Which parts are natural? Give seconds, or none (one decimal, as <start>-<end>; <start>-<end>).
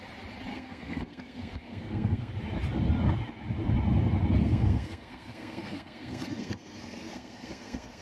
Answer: 0.0-0.5; 2.3-4.4